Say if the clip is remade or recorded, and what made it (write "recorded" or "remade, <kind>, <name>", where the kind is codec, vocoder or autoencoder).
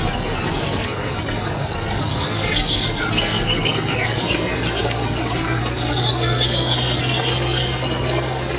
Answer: remade, codec, SNAC